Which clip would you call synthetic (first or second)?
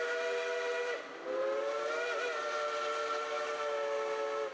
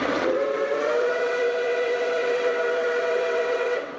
second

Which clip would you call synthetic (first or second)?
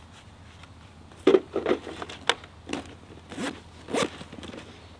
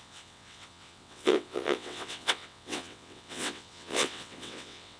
second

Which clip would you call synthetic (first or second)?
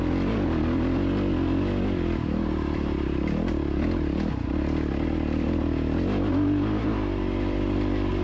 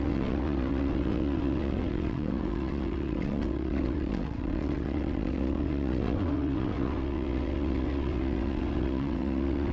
second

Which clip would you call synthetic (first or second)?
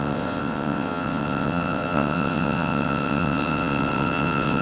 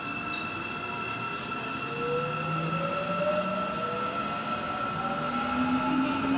first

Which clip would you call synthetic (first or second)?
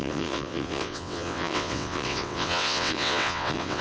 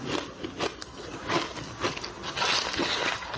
first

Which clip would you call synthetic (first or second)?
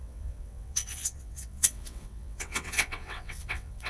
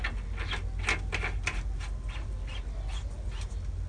first